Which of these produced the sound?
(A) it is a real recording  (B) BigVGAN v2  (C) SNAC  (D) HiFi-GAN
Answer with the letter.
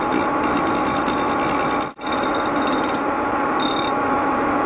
A